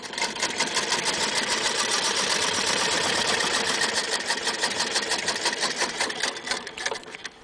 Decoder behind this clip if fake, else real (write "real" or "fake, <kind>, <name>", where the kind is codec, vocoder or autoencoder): fake, vocoder, BigVGAN v2